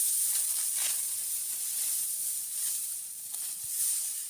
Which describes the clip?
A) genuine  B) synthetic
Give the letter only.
A